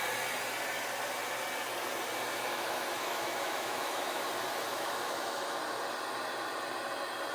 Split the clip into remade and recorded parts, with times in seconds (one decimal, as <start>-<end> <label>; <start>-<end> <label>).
0.0-2.5 recorded; 2.5-4.2 remade; 4.2-4.7 recorded; 4.7-5.6 remade; 5.6-7.3 recorded